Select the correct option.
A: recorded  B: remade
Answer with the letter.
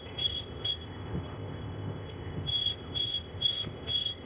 B